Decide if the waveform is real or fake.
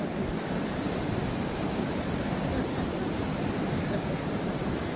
real